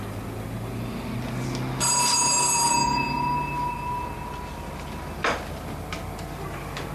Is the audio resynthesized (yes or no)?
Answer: no